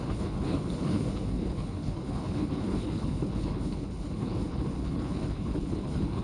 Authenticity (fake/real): fake